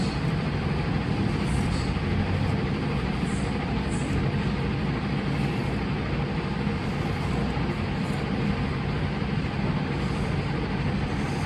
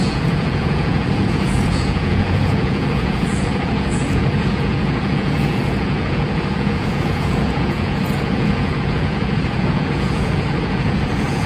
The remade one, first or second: second